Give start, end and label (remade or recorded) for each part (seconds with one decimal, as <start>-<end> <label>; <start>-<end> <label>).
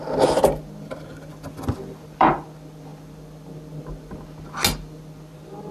0.0-1.3 recorded; 1.3-2.4 remade; 2.4-5.7 recorded